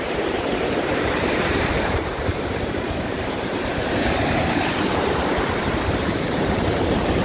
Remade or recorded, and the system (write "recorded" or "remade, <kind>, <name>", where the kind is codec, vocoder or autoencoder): remade, vocoder, BigVGAN v2